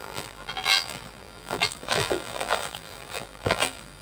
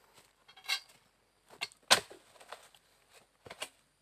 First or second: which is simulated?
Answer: first